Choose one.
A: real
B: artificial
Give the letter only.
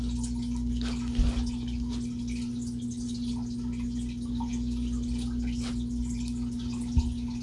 A